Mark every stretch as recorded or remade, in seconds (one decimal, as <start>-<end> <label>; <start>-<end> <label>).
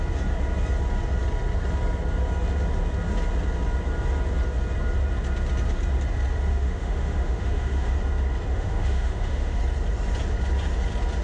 0.0-6.5 recorded; 6.5-7.9 remade; 7.9-8.5 recorded; 8.5-9.6 remade; 9.6-11.2 recorded